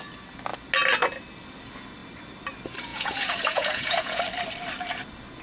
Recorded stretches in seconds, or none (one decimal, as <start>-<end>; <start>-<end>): 0.0-2.9; 4.2-5.4